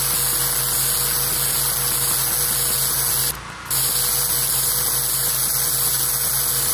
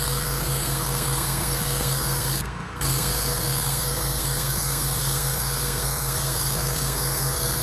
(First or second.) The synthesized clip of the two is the second